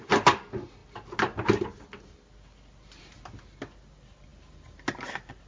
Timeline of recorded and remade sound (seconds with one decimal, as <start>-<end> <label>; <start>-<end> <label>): 0.0-5.5 recorded